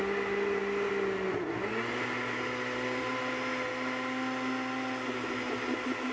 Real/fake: real